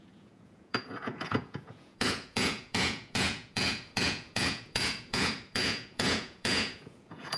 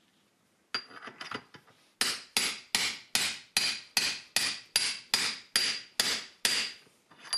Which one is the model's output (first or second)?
first